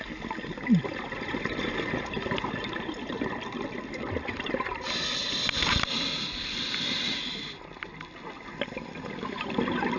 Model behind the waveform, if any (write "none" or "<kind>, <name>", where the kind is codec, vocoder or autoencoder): none